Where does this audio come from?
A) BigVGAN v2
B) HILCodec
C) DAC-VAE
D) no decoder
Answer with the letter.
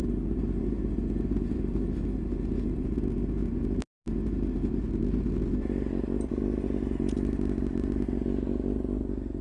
D